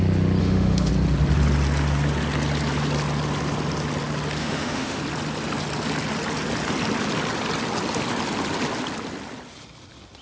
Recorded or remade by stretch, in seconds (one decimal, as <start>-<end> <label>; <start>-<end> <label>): 0.0-0.4 recorded; 0.4-0.9 remade; 0.9-4.4 recorded; 4.4-5.0 remade; 5.0-10.2 recorded